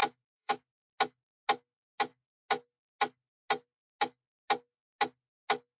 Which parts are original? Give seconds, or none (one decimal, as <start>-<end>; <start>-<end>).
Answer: 0.5-5.8